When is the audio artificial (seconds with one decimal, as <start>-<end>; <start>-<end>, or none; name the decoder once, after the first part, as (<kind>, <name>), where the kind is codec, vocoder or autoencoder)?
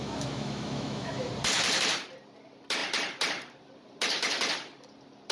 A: 0.0-1.3 (autoencoder, DAC-VAE)